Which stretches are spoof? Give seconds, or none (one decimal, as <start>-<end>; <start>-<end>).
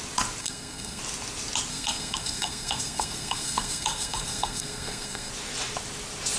0.4-1.0; 1.7-5.3